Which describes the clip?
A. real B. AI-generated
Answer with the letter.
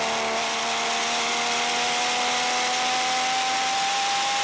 A